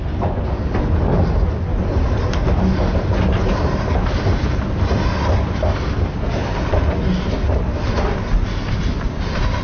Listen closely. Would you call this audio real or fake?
real